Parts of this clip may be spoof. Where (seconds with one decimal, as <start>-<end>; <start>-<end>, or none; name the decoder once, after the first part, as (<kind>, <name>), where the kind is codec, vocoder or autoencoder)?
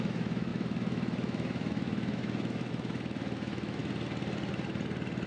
0.0-3.8 (autoencoder, DAC-VAE)